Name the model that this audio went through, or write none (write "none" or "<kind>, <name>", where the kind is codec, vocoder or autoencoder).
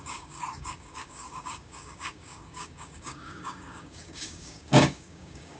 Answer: codec, DAC